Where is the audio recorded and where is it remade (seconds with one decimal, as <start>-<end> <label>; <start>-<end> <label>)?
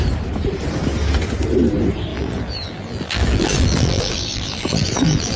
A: 0.0-2.1 recorded; 2.1-5.4 remade